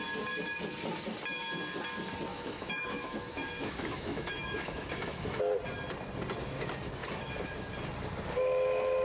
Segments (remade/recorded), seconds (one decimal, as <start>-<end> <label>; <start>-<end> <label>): 0.0-2.3 recorded; 2.3-5.4 remade; 5.4-7.0 recorded; 7.0-7.7 remade; 7.7-9.0 recorded